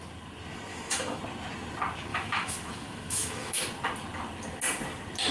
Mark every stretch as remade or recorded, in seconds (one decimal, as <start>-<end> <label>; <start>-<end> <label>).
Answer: 0.0-0.7 recorded; 0.7-1.2 remade; 1.2-2.1 recorded; 2.1-3.6 remade; 3.6-5.3 recorded